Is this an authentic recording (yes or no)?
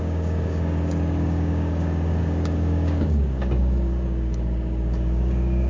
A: no